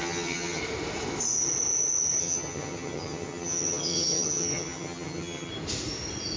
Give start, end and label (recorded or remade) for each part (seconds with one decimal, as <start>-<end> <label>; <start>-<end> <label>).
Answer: 0.0-0.6 remade; 0.6-2.2 recorded; 2.2-5.5 remade; 5.5-6.4 recorded